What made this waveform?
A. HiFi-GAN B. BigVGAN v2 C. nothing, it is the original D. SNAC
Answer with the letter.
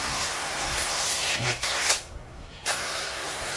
D